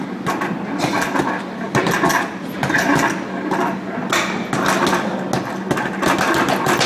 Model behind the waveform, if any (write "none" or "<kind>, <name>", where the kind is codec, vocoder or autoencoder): none